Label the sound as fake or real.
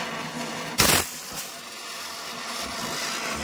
real